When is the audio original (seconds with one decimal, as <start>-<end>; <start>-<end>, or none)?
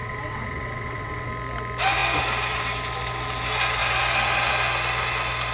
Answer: 1.3-5.5